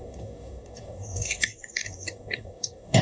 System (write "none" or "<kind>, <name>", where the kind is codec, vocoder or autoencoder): codec, DAC